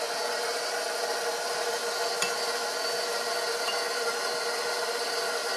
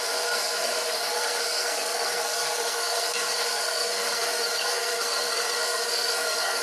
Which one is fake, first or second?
second